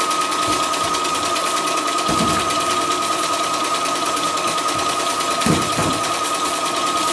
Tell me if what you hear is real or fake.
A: real